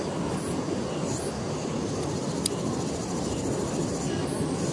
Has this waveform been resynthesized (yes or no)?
no